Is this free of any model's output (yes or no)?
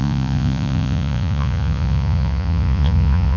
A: no